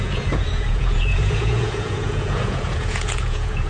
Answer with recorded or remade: remade